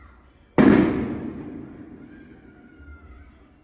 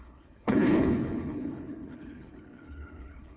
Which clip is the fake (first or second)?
second